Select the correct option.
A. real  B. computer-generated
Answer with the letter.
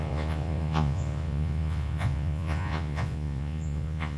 B